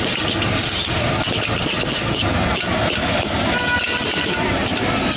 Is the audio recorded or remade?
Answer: recorded